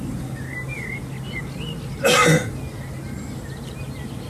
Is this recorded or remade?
recorded